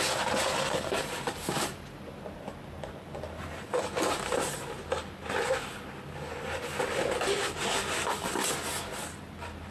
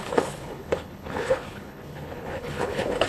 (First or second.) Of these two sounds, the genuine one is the first